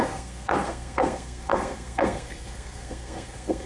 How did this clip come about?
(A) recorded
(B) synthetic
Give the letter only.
B